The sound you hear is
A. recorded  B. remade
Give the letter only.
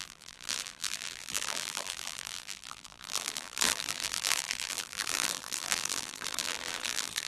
B